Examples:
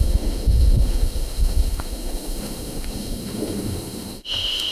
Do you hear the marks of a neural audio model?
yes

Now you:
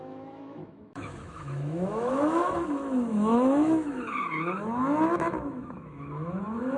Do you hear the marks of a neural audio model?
yes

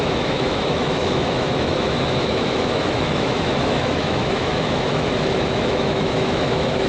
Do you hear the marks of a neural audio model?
yes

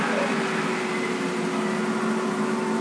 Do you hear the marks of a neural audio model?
no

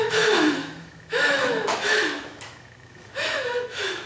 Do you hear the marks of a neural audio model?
yes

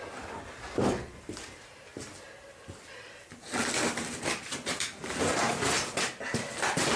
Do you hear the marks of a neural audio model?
no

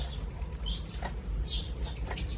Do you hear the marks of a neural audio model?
no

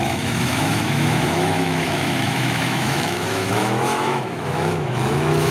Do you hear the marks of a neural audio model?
yes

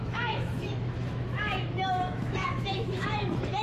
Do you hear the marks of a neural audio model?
yes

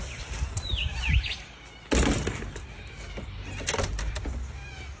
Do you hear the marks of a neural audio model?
no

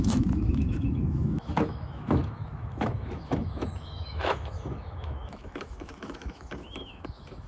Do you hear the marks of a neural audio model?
yes